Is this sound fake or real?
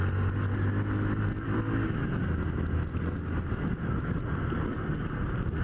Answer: real